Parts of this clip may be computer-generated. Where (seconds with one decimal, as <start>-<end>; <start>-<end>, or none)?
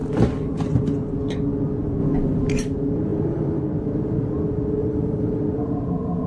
3.1-3.6; 4.8-5.4